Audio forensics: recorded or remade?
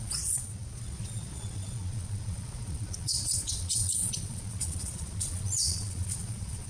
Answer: remade